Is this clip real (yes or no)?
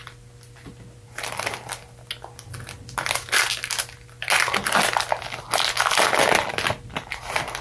yes